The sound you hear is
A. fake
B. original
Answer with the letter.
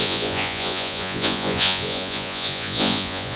A